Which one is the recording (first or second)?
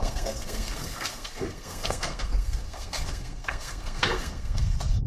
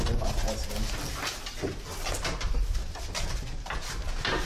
second